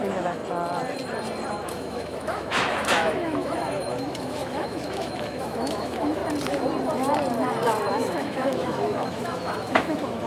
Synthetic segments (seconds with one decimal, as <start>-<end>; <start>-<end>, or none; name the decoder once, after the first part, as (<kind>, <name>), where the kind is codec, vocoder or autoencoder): 0.0-0.4 (autoencoder, DAC-VAE); 1.5-6.2; 7.9-10.3